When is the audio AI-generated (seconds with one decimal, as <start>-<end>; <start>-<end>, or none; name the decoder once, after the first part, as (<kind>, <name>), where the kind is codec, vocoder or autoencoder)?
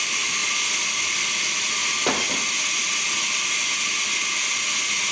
none